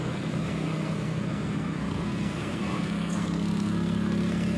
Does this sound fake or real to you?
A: fake